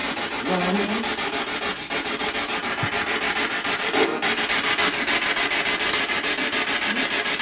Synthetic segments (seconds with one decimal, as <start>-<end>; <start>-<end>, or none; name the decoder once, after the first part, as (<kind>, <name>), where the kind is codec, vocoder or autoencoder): none